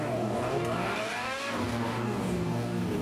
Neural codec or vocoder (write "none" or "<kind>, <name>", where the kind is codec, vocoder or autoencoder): codec, DAC